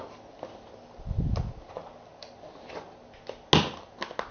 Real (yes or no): yes